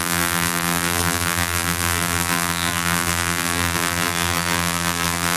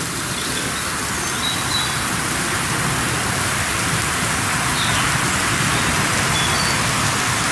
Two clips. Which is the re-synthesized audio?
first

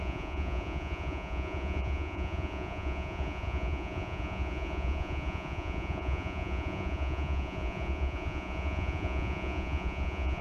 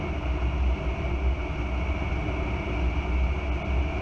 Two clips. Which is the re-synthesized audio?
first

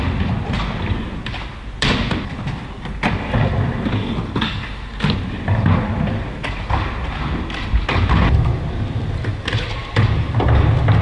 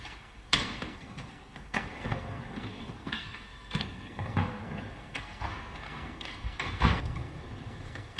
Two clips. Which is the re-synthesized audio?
second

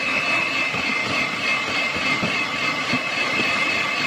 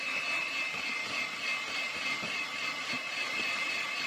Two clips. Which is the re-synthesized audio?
first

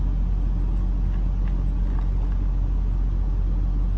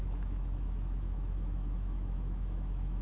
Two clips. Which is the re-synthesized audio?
second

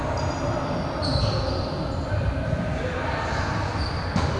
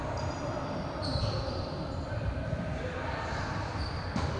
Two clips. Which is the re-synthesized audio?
second